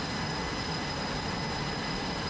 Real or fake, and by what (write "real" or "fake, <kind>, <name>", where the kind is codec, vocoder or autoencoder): real